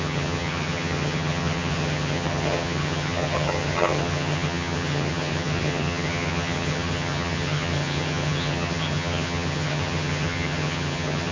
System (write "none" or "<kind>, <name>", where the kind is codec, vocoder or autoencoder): vocoder, HiFi-GAN